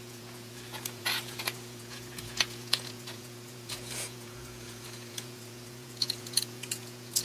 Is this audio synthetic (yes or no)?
yes